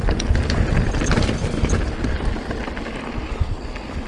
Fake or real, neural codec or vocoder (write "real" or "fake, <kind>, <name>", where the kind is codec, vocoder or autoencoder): real